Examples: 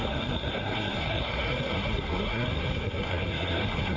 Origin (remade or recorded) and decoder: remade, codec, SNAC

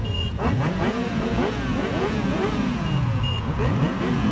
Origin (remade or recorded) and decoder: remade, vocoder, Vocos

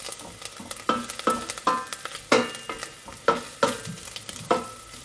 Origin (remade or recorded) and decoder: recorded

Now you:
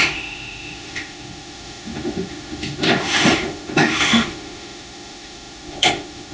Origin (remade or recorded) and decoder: remade, autoencoder, DAC-VAE